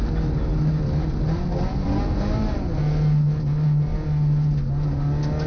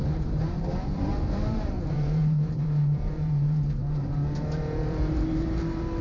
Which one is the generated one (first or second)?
second